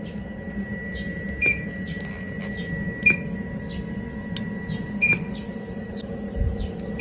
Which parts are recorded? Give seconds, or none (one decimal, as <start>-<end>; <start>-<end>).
0.0-7.0